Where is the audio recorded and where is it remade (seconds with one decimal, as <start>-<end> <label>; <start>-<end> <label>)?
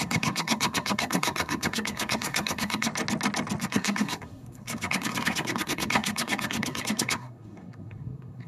0.0-2.9 remade; 2.9-3.6 recorded; 3.6-8.5 remade